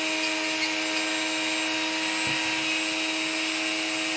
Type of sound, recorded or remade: recorded